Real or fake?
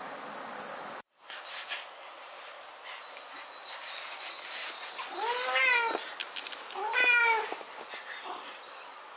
real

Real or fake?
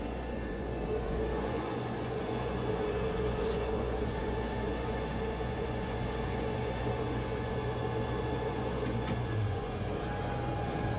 fake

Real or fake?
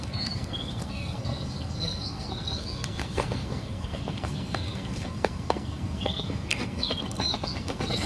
fake